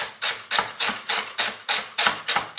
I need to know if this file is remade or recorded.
recorded